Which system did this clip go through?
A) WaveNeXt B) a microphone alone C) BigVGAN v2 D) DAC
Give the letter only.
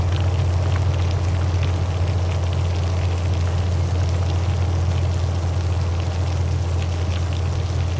B